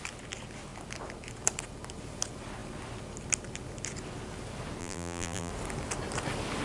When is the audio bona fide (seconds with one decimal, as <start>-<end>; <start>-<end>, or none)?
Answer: 0.0-4.8; 5.5-6.6